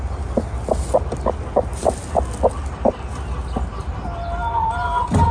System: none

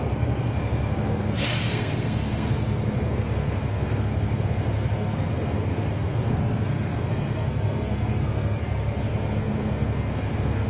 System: codec, SNAC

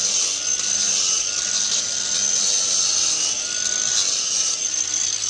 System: none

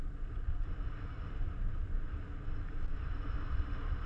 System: none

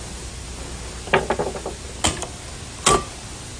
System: none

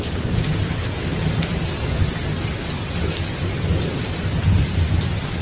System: none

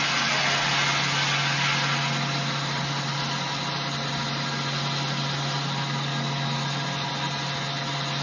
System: none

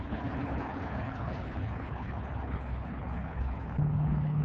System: codec, HILCodec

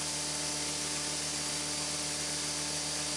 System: none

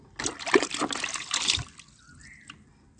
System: none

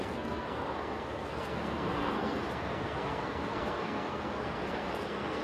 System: codec, SNAC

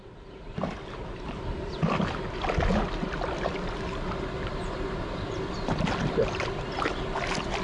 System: none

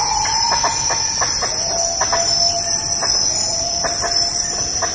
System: none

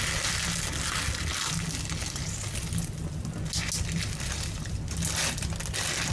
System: none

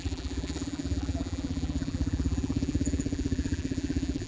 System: vocoder, BigVGAN v2